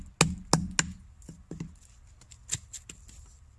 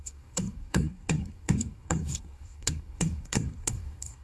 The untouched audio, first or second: first